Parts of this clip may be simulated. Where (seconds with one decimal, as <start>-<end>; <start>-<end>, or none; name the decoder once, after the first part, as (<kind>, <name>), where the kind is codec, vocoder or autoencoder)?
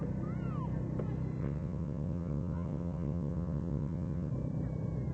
1.4-4.3 (vocoder, WaveNeXt)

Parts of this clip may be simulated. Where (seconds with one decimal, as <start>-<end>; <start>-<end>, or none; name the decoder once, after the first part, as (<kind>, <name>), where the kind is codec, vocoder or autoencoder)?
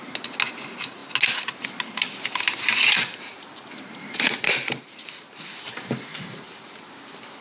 none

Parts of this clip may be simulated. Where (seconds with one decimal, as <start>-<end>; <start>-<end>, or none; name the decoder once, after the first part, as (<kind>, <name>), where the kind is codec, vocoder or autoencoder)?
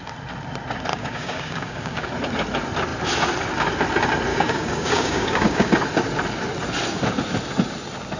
0.9-2.1 (codec, DAC); 4.3-5.7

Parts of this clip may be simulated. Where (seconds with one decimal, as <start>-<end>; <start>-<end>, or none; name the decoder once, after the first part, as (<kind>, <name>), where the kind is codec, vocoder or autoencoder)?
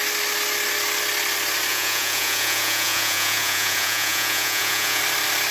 1.7-5.0 (vocoder, Vocos)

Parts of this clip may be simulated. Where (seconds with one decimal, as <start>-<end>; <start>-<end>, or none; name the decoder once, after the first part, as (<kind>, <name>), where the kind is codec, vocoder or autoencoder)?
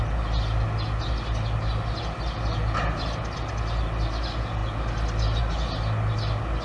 none